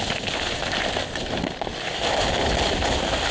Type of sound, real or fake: real